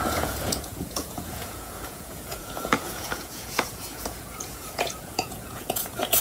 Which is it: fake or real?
fake